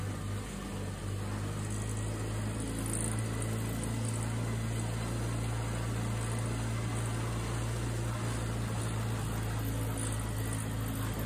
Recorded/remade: recorded